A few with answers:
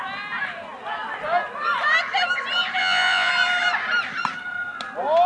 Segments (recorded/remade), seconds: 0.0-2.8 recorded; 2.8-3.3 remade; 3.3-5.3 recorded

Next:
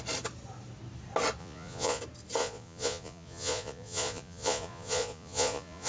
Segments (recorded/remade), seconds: 0.0-1.4 recorded; 1.4-2.0 remade; 2.0-2.4 recorded; 2.4-5.9 remade

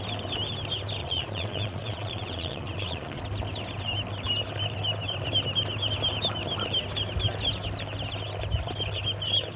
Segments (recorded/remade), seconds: 0.0-1.0 recorded; 1.0-3.2 remade; 3.2-9.6 recorded

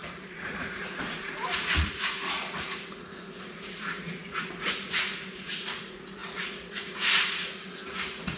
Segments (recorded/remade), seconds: 0.0-8.4 remade

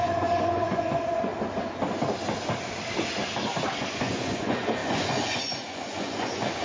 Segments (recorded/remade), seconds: 0.0-1.3 remade; 1.3-3.8 recorded; 3.8-6.6 remade